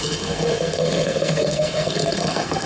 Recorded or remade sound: remade